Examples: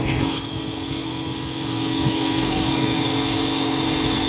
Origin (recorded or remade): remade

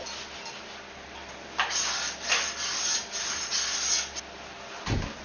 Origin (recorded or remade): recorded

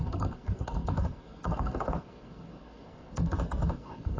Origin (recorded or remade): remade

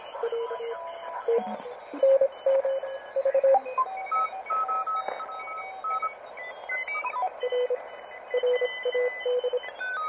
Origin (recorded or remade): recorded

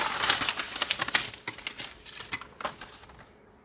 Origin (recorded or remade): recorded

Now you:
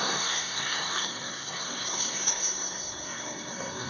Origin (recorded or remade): remade